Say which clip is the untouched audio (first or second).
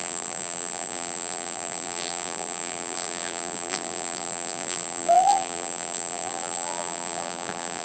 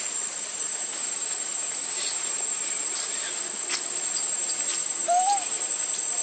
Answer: second